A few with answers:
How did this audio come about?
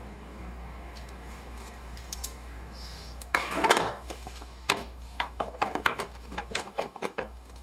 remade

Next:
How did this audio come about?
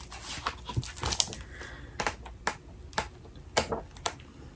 recorded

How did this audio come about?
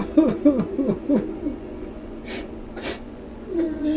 remade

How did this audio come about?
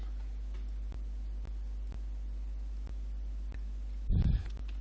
recorded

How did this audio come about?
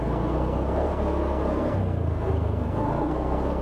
remade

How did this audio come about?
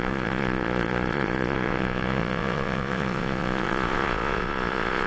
remade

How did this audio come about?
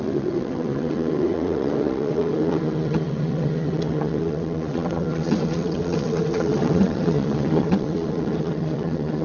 remade